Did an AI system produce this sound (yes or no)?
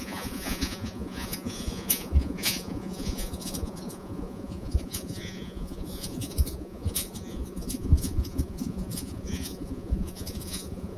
yes